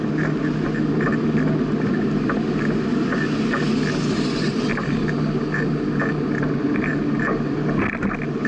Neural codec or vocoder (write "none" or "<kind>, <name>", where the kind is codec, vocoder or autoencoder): none